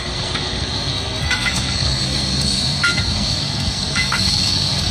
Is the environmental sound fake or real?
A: fake